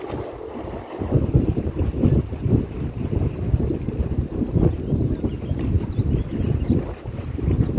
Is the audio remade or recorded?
recorded